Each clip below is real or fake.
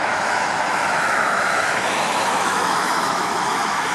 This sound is fake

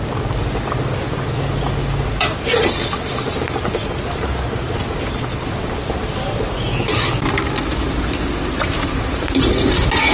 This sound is real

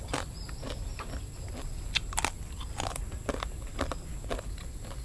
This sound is real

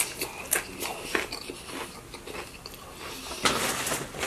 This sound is real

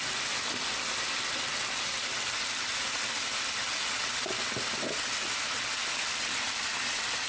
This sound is real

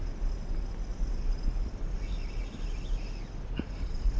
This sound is real